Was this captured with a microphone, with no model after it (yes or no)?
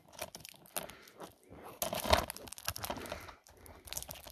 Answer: yes